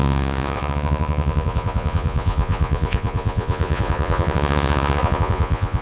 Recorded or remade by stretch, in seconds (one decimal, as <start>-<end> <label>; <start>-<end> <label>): 0.0-5.8 remade